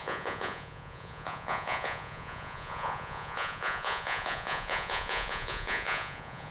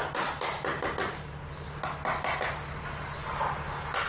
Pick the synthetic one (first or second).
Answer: first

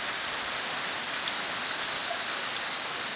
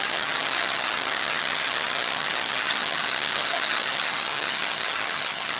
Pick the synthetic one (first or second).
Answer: second